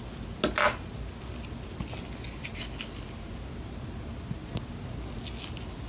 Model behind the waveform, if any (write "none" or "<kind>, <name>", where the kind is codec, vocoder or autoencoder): none